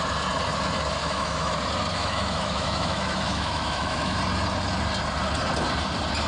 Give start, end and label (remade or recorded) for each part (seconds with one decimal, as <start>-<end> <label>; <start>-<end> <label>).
0.0-1.0 recorded; 1.0-1.5 remade; 1.5-1.9 recorded; 1.9-4.2 remade; 4.2-6.3 recorded